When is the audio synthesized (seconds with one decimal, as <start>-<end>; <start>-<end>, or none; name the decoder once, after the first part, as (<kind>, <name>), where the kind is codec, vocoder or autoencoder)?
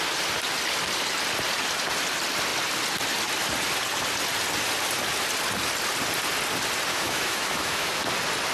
6.9-8.0 (autoencoder, DAC-VAE)